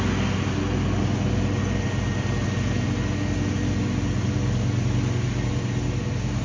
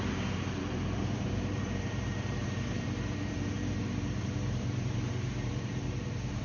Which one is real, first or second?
first